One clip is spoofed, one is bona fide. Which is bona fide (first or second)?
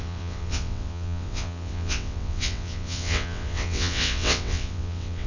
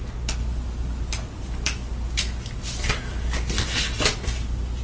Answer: second